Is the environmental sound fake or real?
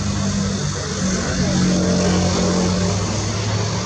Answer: real